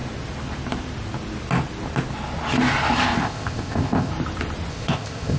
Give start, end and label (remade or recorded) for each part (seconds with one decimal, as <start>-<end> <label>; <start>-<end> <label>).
0.0-3.2 recorded; 3.2-4.1 remade; 4.1-4.7 recorded; 4.7-5.4 remade